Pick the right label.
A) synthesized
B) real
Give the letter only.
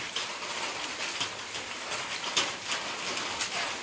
B